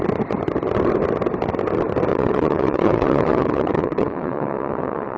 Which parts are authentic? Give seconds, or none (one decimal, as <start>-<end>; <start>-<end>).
0.0-2.1